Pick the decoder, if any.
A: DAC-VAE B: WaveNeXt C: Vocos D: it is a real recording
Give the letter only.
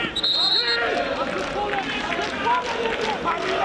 D